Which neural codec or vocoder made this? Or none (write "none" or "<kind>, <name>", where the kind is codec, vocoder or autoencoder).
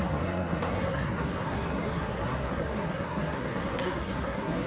codec, SNAC